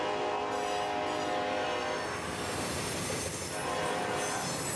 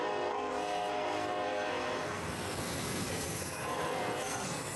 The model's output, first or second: second